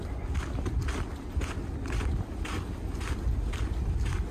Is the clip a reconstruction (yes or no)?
no